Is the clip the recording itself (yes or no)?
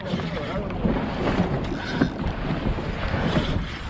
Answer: yes